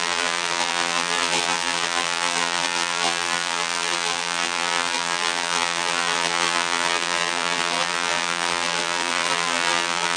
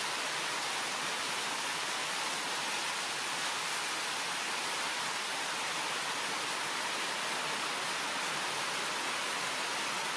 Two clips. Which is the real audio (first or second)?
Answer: second